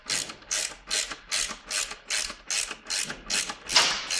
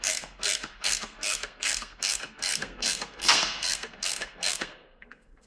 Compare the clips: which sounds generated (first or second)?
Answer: second